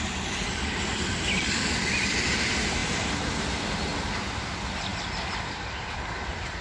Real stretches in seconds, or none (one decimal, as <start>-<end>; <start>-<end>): 0.0-6.6